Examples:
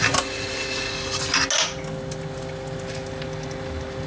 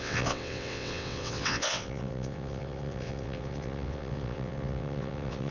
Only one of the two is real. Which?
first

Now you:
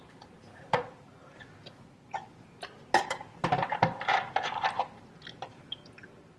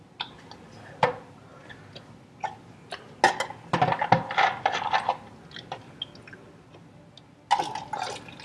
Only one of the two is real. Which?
second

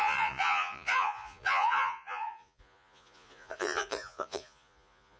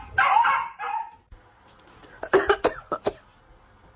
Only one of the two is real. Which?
second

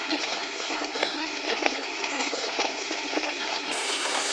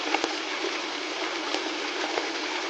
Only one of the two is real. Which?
second